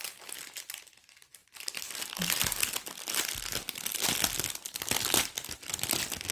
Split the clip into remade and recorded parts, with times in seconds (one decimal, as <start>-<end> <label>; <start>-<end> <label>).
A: 0.0-6.3 recorded